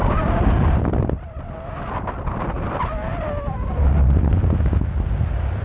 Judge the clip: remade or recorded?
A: recorded